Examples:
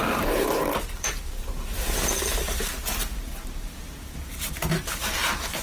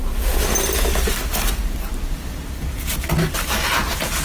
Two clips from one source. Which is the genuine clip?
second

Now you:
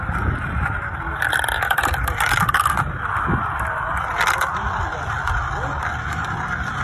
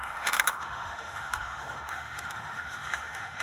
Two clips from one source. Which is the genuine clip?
first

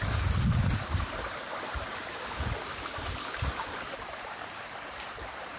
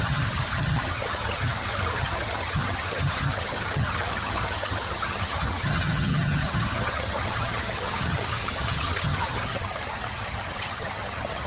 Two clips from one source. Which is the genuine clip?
first